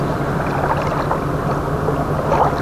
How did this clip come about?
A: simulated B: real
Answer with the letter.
B